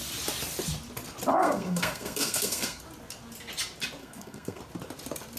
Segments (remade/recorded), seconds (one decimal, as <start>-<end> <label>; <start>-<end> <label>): 0.0-1.3 recorded; 1.3-2.8 remade; 2.8-4.0 recorded; 4.0-4.6 remade; 4.6-5.4 recorded